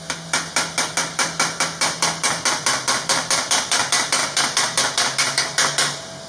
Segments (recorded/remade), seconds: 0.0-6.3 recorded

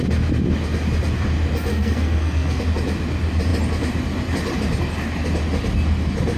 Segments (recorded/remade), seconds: 0.0-1.7 recorded; 1.7-2.6 remade; 2.6-6.4 recorded

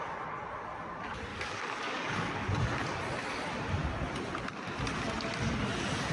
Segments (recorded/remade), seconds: 0.0-1.3 recorded; 1.3-2.5 remade; 2.5-6.1 recorded

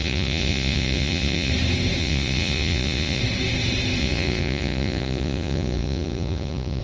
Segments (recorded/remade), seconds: 0.0-1.5 remade; 1.5-2.0 recorded; 2.0-3.2 remade; 3.2-4.0 recorded; 4.0-6.8 remade

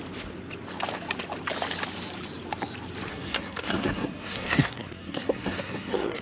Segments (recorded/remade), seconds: 0.0-3.1 recorded; 3.1-6.2 remade

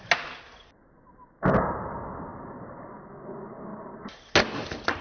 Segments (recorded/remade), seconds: 0.0-2.3 recorded; 2.3-2.9 remade; 2.9-3.7 recorded; 3.7-4.3 remade; 4.3-5.0 recorded